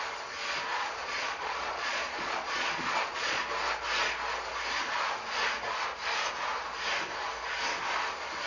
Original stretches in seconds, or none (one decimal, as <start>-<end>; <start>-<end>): 0.0-0.7; 3.4-8.5